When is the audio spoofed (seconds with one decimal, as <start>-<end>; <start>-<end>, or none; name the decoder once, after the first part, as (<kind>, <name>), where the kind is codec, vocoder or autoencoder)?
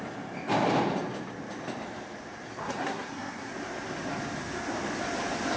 2.6-3.5 (codec, SNAC)